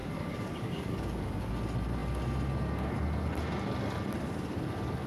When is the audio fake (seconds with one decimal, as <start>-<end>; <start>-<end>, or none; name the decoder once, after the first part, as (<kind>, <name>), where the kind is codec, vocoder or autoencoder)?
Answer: 0.0-1.5 (codec, DAC)